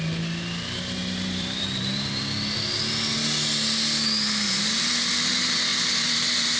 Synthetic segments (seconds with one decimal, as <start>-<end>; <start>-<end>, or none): 1.0-2.2; 5.7-6.6